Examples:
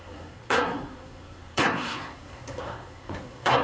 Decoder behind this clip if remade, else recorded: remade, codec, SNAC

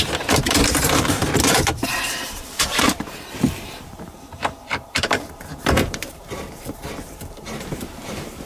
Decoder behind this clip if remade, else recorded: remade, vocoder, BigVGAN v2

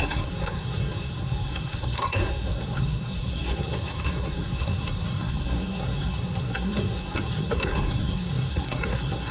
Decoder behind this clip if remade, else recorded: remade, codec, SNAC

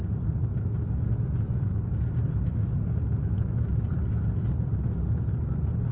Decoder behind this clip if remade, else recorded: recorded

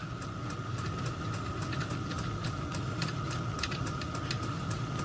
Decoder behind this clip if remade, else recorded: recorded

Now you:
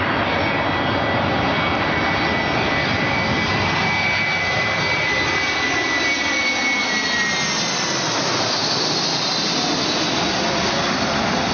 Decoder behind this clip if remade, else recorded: recorded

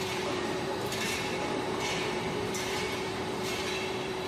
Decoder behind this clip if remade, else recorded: remade, vocoder, BigVGAN v2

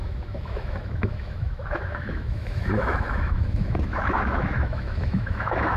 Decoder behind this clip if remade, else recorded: remade, autoencoder, DAC-VAE